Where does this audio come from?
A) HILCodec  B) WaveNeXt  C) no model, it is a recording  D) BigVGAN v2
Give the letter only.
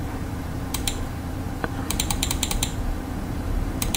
D